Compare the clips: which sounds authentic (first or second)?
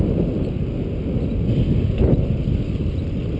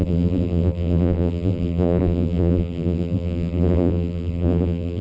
first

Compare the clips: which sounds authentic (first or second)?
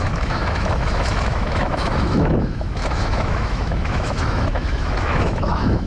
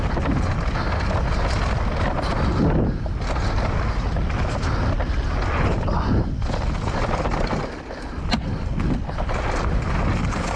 second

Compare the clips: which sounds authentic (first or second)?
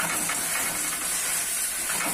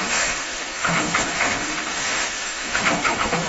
first